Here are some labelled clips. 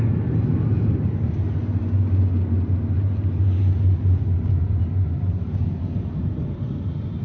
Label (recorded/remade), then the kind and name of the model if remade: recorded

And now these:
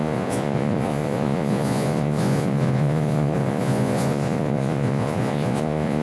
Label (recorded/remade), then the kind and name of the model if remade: remade, vocoder, Vocos